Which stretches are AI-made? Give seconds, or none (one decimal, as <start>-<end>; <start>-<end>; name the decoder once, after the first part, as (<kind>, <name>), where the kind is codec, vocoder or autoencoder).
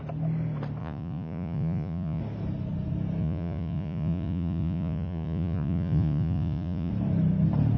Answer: 0.8-2.2 (vocoder, Vocos); 3.2-6.9